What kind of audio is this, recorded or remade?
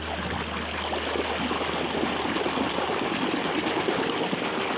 recorded